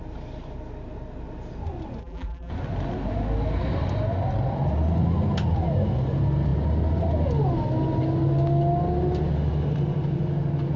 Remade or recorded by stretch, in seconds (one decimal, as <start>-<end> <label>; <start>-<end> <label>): 0.0-2.0 recorded; 2.0-2.5 remade; 2.5-10.8 recorded